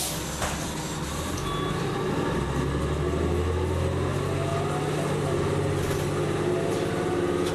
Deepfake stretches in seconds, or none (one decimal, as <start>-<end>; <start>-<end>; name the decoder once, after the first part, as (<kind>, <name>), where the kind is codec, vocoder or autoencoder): none